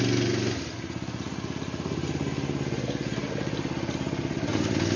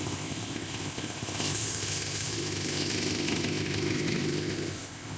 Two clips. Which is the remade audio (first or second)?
second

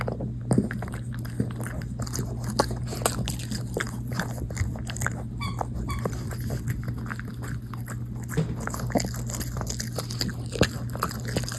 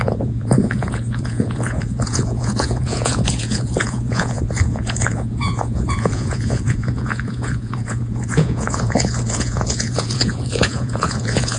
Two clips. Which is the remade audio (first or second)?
second